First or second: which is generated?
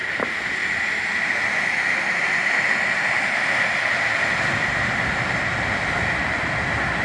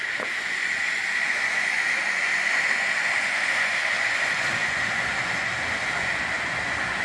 second